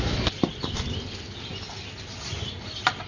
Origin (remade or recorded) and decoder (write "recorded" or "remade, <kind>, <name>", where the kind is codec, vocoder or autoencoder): recorded